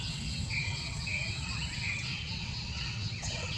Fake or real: fake